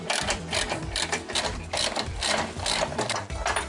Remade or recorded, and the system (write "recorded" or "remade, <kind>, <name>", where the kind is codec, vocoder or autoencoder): remade, vocoder, BigVGAN v2